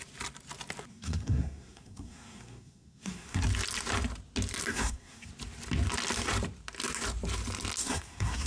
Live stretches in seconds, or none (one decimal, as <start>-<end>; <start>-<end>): 0.0-0.9; 3.4-4.7; 5.3-7.8